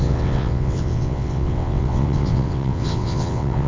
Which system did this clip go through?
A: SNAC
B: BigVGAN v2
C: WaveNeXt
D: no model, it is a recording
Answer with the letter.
C